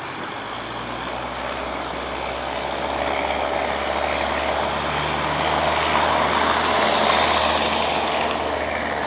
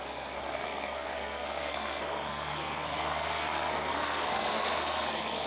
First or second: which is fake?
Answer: second